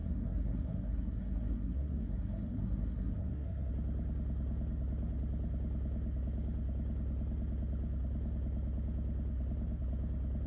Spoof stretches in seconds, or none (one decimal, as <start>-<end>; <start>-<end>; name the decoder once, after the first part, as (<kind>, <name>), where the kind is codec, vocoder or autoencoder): 0.0-3.7 (codec, SNAC)